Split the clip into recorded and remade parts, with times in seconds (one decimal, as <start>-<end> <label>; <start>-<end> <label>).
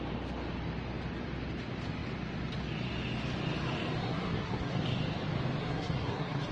0.0-4.0 recorded; 4.0-4.8 remade; 4.8-5.6 recorded; 5.6-6.5 remade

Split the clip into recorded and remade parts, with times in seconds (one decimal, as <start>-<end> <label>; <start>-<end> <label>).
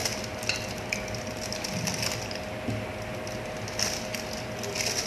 0.0-5.1 recorded